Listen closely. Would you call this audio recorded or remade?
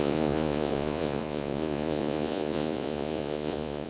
remade